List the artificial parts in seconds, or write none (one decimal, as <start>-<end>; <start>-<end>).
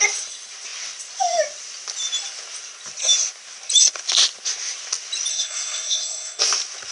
5.3-6.4